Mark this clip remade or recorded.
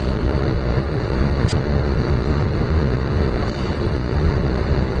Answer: remade